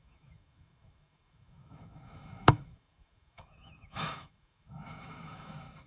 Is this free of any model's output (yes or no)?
no